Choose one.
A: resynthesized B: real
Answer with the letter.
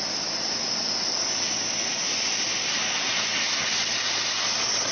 B